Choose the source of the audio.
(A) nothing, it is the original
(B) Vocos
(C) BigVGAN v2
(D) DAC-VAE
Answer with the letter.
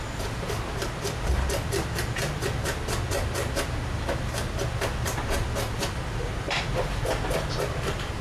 A